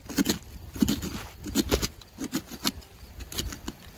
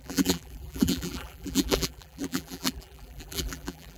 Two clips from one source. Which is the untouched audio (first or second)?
first